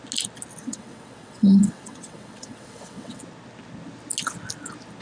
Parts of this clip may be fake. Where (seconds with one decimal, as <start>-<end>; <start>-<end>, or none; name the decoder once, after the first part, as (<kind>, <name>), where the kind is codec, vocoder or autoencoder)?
0.6-3.2 (vocoder, WaveNeXt)